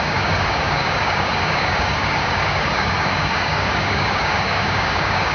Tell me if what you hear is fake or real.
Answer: fake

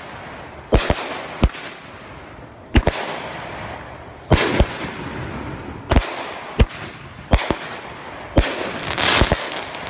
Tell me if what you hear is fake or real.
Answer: real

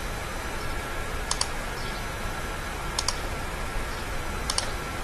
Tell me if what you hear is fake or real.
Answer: real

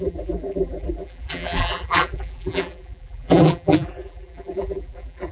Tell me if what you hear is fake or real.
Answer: fake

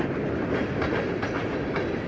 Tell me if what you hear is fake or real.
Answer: real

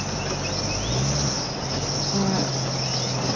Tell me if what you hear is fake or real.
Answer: real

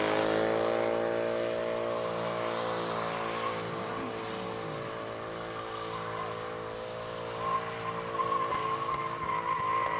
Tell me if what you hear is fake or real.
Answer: real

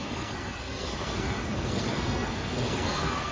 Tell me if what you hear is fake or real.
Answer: fake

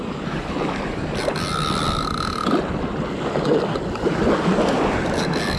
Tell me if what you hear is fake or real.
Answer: real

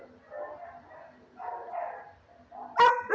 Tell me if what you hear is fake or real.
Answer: real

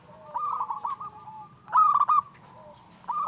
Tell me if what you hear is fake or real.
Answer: real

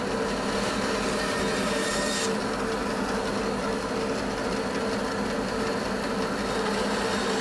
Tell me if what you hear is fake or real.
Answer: real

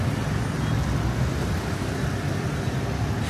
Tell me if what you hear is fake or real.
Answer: real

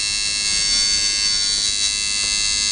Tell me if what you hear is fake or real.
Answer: real